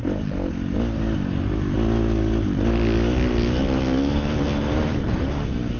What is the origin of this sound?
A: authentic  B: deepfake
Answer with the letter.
A